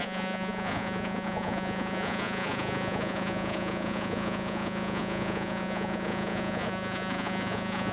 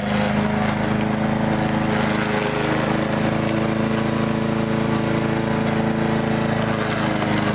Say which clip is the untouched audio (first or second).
second